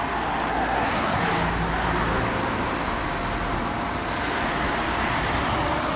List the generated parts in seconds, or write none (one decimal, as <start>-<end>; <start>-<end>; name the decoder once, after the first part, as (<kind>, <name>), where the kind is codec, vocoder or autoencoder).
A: 0.5-1.2 (codec, SNAC)